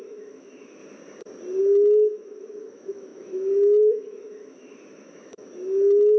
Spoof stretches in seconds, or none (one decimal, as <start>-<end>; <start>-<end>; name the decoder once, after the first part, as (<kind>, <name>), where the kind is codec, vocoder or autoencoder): 0.0-0.8 (autoencoder, DAC-VAE); 1.6-6.2